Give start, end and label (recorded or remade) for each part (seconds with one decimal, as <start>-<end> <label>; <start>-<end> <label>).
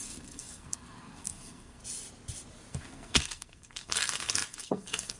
0.0-1.8 remade; 1.8-2.7 recorded; 2.7-5.2 remade